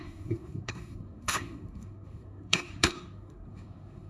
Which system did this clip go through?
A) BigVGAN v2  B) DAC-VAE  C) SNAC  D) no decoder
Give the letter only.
C